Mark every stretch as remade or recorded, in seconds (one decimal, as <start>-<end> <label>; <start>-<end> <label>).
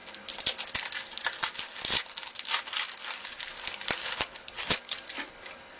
0.0-4.0 recorded; 4.0-4.5 remade; 4.5-5.8 recorded